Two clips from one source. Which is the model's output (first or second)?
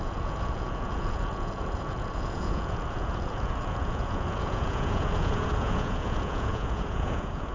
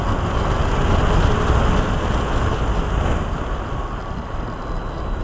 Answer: first